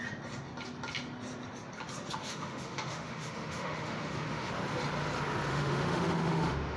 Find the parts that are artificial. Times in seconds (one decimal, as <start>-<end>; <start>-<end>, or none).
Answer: 2.2-4.5; 5.5-6.8

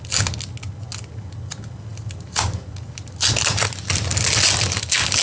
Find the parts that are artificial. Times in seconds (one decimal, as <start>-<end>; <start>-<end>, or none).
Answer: none

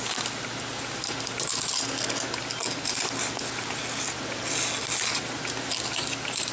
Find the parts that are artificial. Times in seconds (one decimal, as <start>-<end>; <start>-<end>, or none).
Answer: none

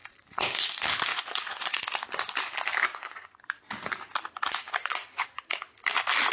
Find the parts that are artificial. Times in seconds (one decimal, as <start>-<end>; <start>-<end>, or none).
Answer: 1.1-1.8; 2.9-3.4; 4.8-5.4